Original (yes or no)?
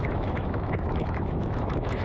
no